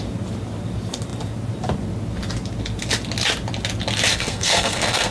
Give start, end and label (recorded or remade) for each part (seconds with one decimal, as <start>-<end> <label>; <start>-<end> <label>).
0.0-4.1 recorded; 4.1-5.1 remade